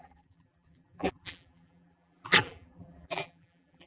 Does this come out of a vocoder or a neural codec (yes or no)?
yes